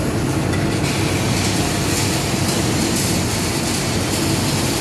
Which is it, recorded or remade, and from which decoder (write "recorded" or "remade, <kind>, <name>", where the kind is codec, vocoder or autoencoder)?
recorded